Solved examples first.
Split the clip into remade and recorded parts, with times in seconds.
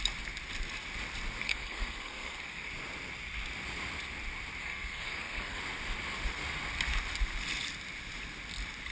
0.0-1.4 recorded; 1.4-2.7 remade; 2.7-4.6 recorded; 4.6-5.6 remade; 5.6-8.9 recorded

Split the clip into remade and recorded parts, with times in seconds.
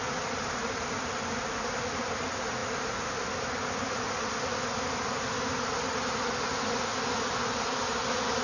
0.0-8.4 recorded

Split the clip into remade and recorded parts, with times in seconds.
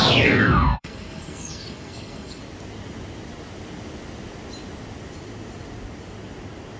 0.0-2.4 remade; 2.4-6.8 recorded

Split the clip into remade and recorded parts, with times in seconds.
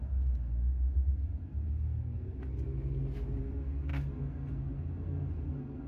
0.0-2.4 remade; 2.4-3.4 recorded; 3.4-5.9 remade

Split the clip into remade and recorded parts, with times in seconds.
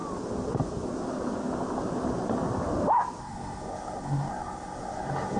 0.0-3.2 recorded; 3.2-5.4 remade